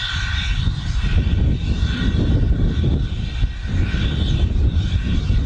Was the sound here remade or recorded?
recorded